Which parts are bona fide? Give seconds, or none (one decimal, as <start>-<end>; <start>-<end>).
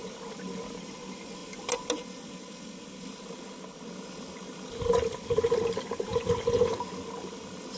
0.0-7.8